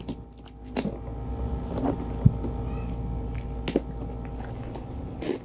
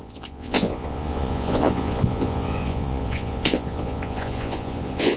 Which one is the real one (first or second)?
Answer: first